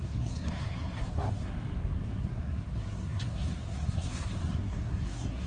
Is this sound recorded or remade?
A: remade